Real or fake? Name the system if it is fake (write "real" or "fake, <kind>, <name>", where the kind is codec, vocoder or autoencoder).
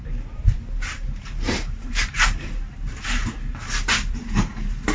fake, vocoder, BigVGAN v2